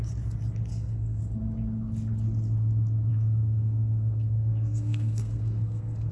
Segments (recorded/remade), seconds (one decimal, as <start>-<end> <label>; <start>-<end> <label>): 0.0-0.7 recorded; 0.7-1.2 remade; 1.2-3.1 recorded; 3.1-6.1 remade

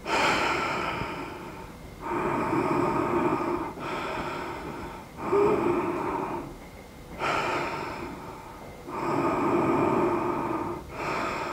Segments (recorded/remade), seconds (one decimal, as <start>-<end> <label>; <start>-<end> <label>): 0.0-11.5 recorded

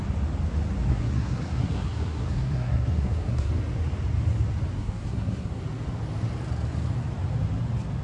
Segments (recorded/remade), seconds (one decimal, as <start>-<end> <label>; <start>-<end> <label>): 0.0-0.9 recorded; 0.9-3.5 remade; 3.5-4.7 recorded; 4.7-5.6 remade; 5.6-8.0 recorded

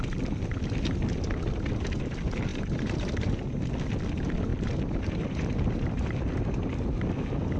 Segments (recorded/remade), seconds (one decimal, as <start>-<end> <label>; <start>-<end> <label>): 0.0-2.5 recorded; 2.5-3.3 remade; 3.3-4.5 recorded; 4.5-6.7 remade; 6.7-7.6 recorded

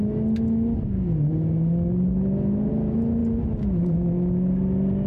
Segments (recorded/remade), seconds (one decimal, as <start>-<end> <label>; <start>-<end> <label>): 0.0-5.1 recorded